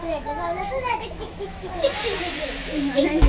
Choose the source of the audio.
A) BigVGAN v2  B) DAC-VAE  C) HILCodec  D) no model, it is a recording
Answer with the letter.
B